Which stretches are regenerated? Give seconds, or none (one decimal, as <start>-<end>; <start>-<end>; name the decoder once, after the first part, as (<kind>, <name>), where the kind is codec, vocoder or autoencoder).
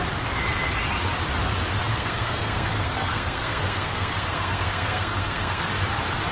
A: 1.9-5.7 (codec, SNAC)